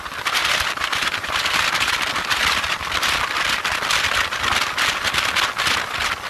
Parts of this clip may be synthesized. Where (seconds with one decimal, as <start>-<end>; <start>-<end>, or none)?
0.4-1.7